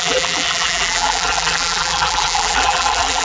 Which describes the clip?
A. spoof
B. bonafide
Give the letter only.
A